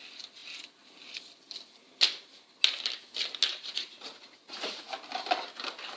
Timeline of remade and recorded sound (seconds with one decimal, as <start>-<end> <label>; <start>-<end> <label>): 0.0-3.5 recorded; 3.5-4.9 remade; 4.9-6.0 recorded